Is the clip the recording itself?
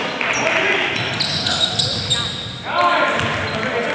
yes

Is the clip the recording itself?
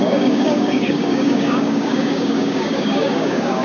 no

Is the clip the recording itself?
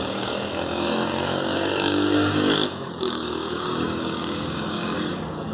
no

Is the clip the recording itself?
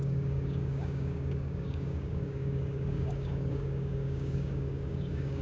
no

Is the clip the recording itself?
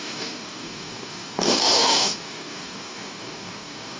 no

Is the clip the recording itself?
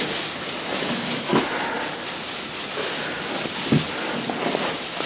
yes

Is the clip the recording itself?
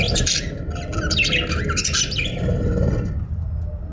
yes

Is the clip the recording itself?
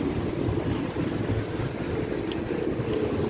yes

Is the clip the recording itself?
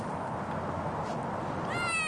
yes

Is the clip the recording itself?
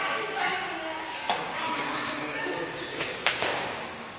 no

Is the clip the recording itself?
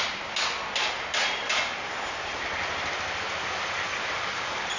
yes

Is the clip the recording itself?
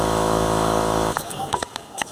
no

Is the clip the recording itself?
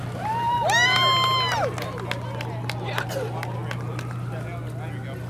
yes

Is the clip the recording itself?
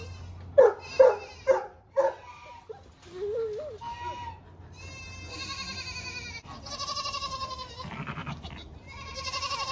yes